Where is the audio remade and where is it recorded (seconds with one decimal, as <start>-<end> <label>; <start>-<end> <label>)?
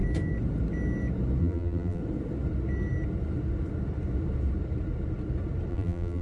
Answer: 0.0-1.4 recorded; 1.4-2.0 remade; 2.0-5.7 recorded; 5.7-6.2 remade